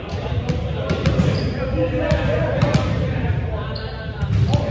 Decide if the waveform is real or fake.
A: real